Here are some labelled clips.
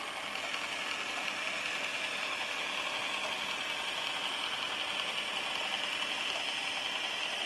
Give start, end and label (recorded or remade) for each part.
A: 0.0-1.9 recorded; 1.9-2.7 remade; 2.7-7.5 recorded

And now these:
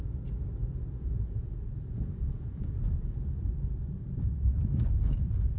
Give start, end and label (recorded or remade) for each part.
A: 0.0-0.6 recorded; 0.6-2.7 remade; 2.7-5.6 recorded

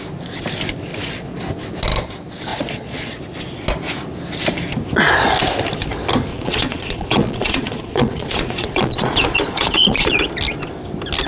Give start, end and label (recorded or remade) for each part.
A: 0.0-0.9 recorded; 0.9-1.4 remade; 1.4-2.5 recorded; 2.5-3.2 remade; 3.2-6.3 recorded; 6.3-10.3 remade; 10.3-11.3 recorded

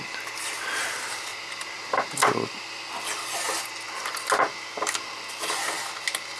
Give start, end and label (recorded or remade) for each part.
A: 0.0-6.4 recorded

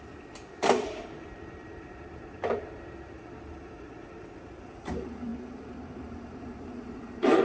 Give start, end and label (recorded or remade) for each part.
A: 0.0-7.4 remade

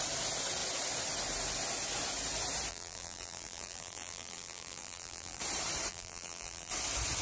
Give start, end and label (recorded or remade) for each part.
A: 0.0-2.7 recorded; 2.7-5.4 remade; 5.4-5.9 recorded; 5.9-6.7 remade; 6.7-7.2 recorded

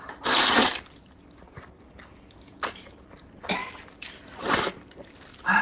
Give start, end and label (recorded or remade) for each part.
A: 0.0-3.6 recorded; 3.6-4.3 remade; 4.3-5.6 recorded